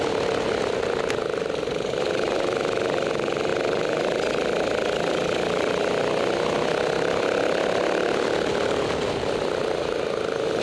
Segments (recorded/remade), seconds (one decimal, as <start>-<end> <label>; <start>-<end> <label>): 0.0-10.6 recorded